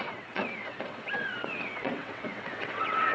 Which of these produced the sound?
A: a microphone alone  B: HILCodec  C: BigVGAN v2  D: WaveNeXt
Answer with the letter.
D